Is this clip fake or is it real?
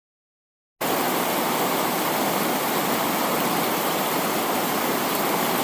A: real